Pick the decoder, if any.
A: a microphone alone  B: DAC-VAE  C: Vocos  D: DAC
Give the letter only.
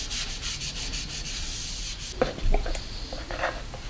A